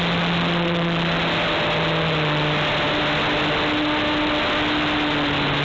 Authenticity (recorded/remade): recorded